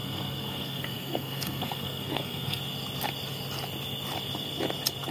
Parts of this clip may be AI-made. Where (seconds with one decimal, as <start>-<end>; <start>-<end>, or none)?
0.0-2.6